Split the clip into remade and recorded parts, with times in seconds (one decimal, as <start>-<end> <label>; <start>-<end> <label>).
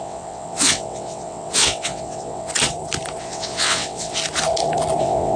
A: 0.0-2.5 remade; 2.5-3.2 recorded; 3.2-4.2 remade; 4.2-5.0 recorded; 5.0-5.4 remade